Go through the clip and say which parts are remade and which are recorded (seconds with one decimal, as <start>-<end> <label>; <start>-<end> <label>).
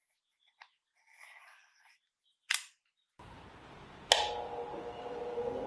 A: 0.0-5.7 recorded